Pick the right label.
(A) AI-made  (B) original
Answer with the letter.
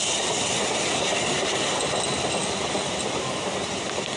B